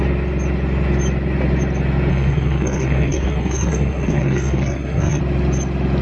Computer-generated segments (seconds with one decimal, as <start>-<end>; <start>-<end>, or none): 2.1-5.2